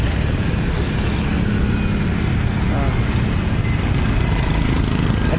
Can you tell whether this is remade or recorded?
recorded